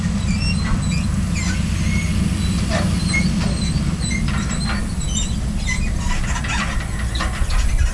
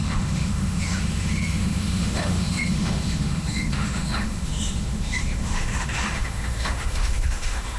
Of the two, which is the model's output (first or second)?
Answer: second